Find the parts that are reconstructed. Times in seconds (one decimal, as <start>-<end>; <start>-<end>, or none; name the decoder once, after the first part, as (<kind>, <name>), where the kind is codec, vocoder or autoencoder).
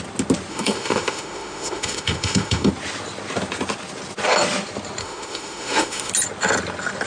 0.5-2.7 (autoencoder, DAC-VAE); 5.0-6.1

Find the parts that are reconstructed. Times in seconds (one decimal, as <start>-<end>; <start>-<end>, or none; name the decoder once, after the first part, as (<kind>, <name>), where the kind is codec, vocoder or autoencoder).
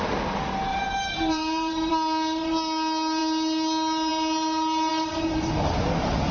0.7-1.9 (vocoder, BigVGAN v2)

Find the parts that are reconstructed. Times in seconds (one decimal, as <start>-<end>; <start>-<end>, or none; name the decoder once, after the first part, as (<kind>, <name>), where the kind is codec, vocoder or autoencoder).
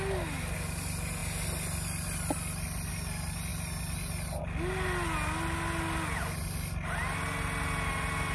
none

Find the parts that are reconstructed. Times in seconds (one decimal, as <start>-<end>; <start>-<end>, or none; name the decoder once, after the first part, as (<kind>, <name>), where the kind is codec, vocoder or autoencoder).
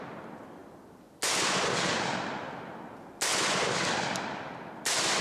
none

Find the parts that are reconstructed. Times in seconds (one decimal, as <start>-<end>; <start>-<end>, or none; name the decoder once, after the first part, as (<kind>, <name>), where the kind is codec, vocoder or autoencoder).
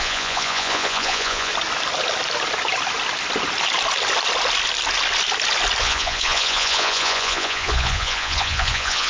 0.0-1.5 (vocoder, Vocos); 5.8-9.1